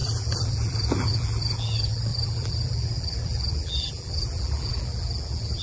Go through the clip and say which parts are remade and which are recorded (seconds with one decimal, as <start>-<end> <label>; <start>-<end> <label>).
0.0-5.6 remade